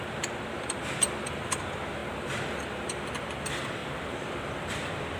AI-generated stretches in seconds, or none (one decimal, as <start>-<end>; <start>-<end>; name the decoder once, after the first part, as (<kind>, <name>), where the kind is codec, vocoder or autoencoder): 0.0-5.2 (vocoder, BigVGAN v2)